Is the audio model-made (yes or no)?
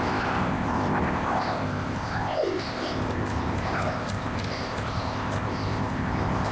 yes